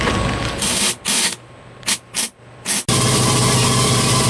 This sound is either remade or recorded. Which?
recorded